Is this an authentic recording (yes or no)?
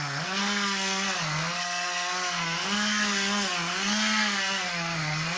no